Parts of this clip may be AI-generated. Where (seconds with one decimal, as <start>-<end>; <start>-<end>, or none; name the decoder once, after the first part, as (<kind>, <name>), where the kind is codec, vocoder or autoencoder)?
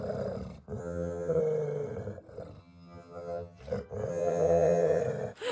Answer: 0.8-1.4 (vocoder, HiFi-GAN); 2.6-3.6; 4.1-5.0